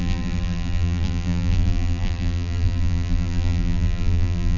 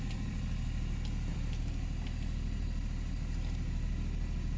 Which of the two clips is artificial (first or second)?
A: first